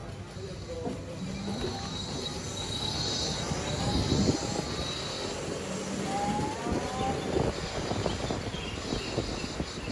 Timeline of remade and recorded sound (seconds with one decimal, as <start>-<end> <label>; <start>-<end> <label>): 0.0-9.9 recorded